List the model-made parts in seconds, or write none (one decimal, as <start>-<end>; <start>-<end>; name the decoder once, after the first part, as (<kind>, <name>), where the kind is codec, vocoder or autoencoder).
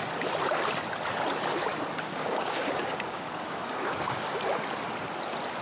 2.1-4.3 (codec, DAC)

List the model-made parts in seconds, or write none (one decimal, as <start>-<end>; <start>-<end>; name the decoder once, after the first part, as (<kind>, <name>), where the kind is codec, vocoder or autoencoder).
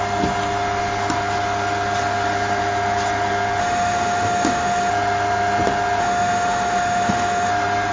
3.6-4.9 (autoencoder, DAC-VAE); 6.0-7.5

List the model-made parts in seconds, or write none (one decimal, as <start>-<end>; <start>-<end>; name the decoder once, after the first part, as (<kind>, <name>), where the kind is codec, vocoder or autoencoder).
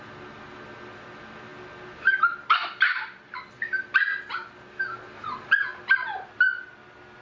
none